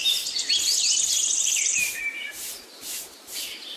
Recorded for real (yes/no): no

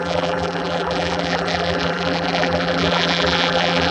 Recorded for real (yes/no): no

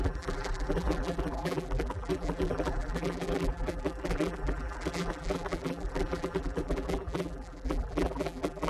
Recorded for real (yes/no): no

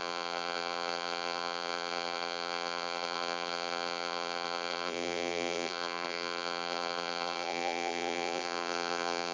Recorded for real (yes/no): no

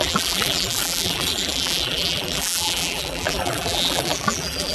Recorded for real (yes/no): no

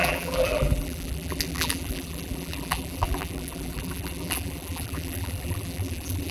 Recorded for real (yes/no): no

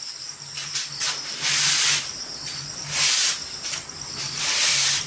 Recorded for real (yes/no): yes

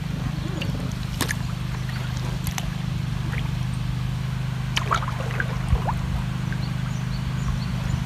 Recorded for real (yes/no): yes